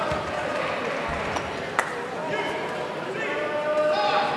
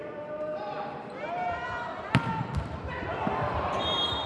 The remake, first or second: second